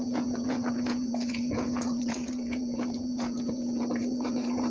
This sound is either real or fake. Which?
fake